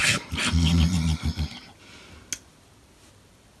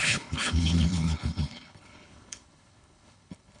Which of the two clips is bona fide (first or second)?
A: first